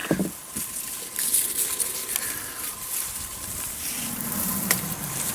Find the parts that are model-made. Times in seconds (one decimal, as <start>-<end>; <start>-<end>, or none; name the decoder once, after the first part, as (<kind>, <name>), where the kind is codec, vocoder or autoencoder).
none